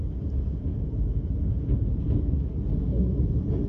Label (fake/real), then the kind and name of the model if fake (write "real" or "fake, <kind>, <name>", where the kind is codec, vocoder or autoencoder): real